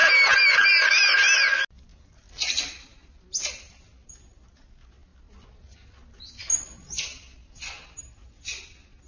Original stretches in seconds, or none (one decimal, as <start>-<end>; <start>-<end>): 0.0-9.1